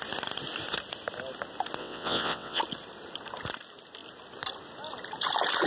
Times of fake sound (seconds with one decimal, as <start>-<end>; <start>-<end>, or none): 1.8-2.6